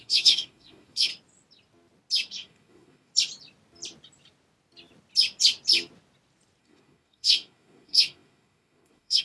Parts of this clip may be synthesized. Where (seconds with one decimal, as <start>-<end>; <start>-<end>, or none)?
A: 0.0-1.1; 2.3-3.1; 6.6-9.2